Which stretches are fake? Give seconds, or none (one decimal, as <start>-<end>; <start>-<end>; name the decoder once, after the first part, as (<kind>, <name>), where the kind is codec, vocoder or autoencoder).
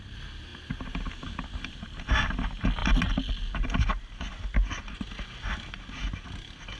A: none